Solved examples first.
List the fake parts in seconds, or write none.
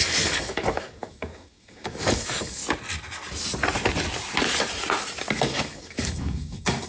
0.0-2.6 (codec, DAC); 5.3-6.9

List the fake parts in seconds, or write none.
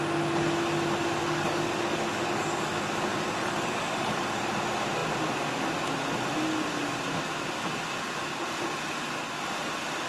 1.2-2.8 (codec, DAC); 3.4-4.2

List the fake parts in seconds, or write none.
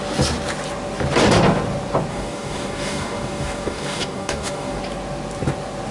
2.1-4.8 (codec, DAC)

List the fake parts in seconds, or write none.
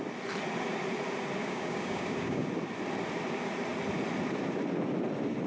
1.4-2.5 (codec, DAC)